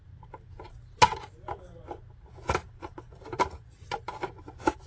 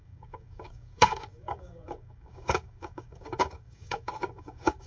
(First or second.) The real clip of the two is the first